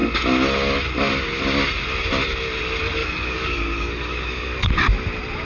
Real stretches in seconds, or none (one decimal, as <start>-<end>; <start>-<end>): 0.0-3.0; 4.7-5.4